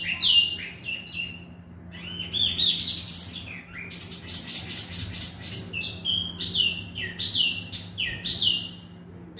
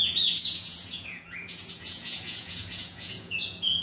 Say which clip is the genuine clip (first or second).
first